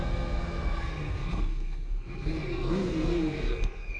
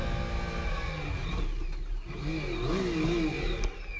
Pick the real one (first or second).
second